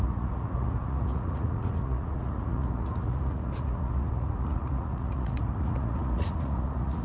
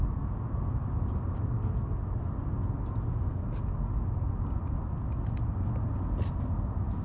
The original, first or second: second